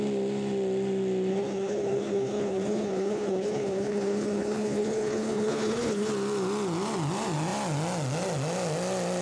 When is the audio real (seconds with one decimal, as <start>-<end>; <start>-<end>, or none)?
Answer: 0.0-1.3; 6.1-9.2